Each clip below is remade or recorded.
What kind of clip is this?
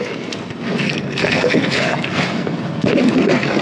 remade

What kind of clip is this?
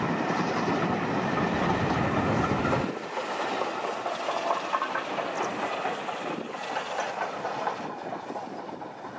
recorded